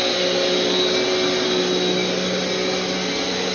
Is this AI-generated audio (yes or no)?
no